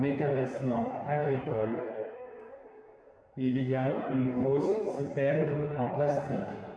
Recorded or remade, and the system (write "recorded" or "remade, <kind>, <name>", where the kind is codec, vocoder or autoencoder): remade, codec, SNAC